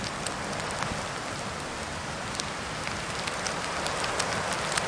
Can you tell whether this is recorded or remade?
recorded